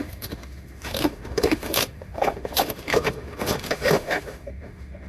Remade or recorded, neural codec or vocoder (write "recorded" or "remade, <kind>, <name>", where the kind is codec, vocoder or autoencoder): remade, autoencoder, DAC-VAE